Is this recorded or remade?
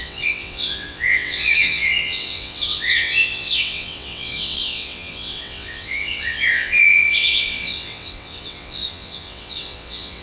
remade